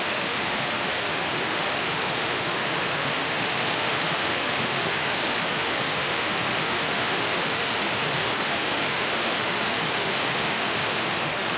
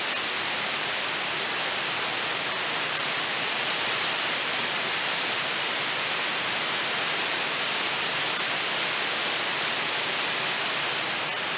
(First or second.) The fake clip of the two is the first